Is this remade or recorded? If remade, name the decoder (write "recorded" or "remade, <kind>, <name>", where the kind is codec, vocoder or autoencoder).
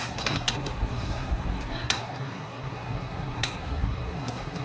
remade, codec, SNAC